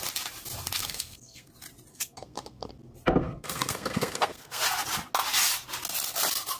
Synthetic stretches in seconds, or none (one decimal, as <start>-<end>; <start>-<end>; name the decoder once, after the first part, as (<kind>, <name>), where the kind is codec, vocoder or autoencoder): 0.8-1.5 (codec, SNAC); 1.9-2.7; 3.2-4.6